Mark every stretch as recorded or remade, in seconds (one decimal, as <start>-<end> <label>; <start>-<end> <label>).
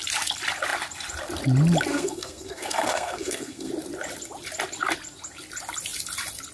0.0-1.9 recorded; 1.9-3.7 remade; 3.7-6.5 recorded